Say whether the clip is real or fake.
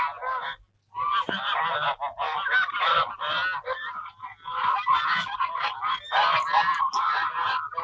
real